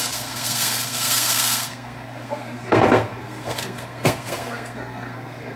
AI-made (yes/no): yes